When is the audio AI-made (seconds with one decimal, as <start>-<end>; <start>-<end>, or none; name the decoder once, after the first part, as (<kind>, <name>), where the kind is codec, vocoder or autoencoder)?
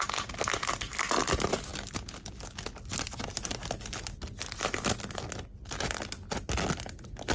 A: none